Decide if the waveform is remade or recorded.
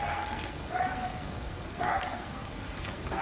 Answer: remade